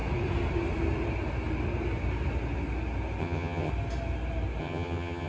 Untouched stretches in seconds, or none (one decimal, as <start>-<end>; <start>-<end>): 0.0-3.2; 3.7-4.6